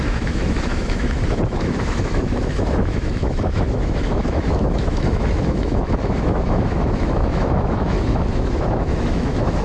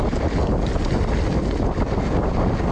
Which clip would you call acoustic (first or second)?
second